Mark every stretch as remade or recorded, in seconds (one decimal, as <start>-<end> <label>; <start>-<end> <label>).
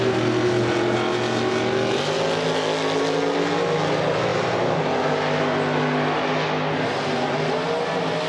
0.0-8.3 recorded